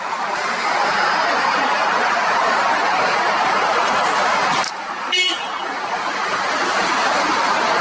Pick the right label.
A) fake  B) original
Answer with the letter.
A